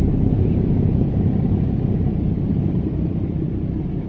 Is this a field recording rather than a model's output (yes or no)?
yes